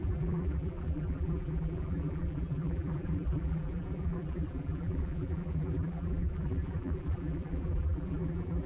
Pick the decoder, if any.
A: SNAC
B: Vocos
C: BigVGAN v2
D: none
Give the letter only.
C